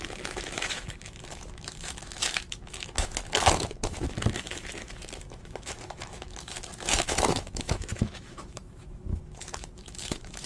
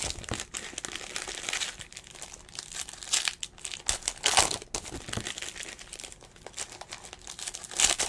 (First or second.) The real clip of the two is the second